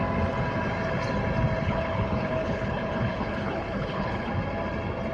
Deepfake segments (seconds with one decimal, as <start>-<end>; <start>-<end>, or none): 1.6-4.3